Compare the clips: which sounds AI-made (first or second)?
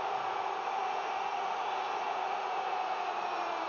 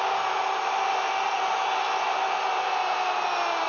first